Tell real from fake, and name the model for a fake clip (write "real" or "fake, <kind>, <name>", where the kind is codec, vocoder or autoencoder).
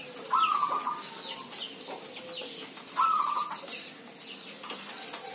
real